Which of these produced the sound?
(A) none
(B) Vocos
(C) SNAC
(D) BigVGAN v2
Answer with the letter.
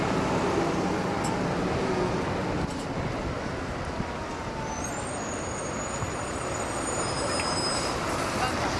A